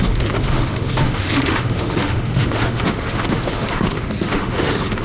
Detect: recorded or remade remade